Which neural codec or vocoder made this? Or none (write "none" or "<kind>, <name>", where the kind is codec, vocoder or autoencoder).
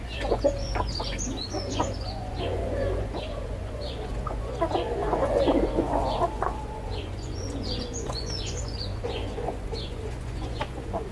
vocoder, Vocos